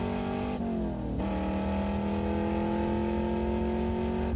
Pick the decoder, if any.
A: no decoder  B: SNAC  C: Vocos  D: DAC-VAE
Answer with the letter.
A